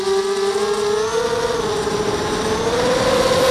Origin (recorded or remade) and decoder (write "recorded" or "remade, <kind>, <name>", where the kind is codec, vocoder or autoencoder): recorded